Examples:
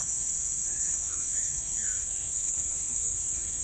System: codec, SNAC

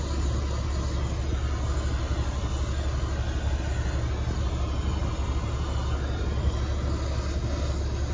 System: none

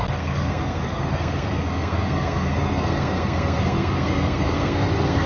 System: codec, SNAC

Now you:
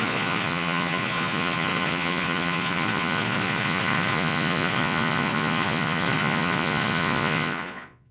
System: vocoder, Vocos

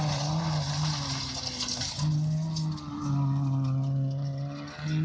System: none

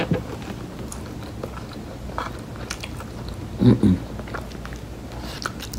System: none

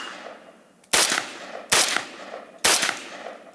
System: none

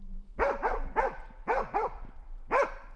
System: none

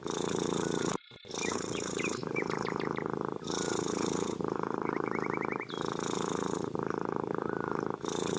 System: vocoder, BigVGAN v2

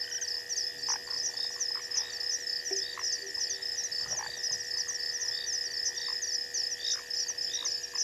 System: none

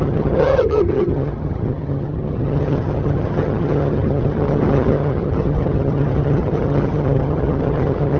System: vocoder, HiFi-GAN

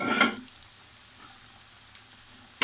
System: none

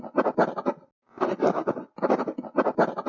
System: none